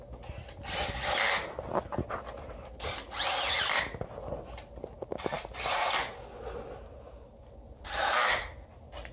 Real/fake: real